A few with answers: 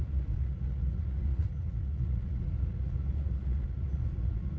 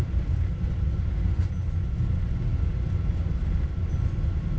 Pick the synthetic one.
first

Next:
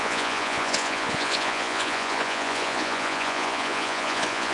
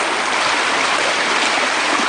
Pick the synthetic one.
first